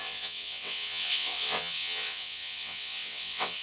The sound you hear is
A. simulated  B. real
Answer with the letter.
A